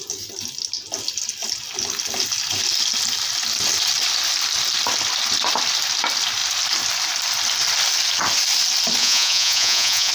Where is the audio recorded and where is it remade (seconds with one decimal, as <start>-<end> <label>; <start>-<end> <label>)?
0.0-9.0 recorded; 9.0-10.1 remade